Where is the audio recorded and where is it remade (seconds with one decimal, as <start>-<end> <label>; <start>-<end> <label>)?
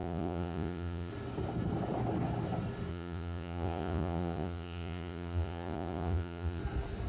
0.0-1.1 remade; 1.1-2.9 recorded; 2.9-6.6 remade; 6.6-7.1 recorded